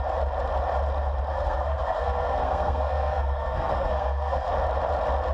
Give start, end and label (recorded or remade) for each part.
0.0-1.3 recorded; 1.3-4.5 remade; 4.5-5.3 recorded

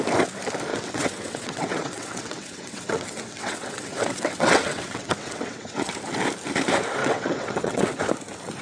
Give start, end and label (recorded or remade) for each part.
0.0-0.7 recorded; 0.7-5.9 remade; 5.9-7.0 recorded; 7.0-8.0 remade; 8.0-8.6 recorded